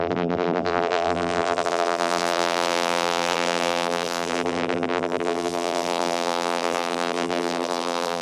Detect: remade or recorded remade